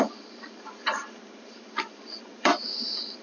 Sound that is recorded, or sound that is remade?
remade